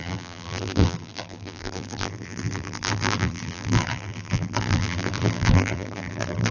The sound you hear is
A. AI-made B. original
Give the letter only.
A